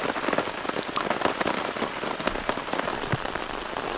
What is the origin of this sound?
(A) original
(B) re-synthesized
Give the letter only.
B